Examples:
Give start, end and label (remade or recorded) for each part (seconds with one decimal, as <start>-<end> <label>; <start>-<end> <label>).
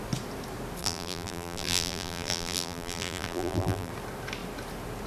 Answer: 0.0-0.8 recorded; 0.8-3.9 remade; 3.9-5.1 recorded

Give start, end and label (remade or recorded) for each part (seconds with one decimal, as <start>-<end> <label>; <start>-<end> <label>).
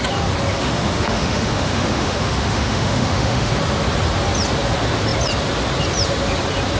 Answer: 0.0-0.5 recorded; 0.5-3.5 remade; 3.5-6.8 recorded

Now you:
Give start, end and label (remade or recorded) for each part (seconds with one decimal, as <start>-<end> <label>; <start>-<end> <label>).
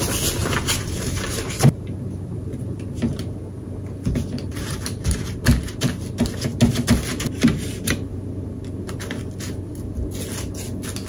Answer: 0.0-0.4 recorded; 0.4-3.4 remade; 3.4-4.5 recorded; 4.5-6.0 remade; 6.0-11.1 recorded